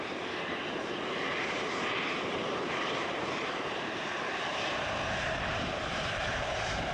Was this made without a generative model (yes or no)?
no